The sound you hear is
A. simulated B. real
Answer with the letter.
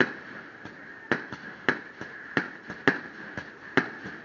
B